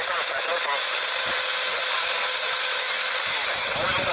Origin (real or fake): real